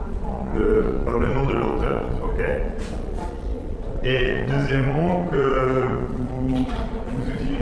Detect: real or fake fake